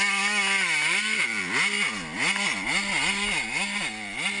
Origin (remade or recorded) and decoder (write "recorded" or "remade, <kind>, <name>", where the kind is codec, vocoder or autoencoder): recorded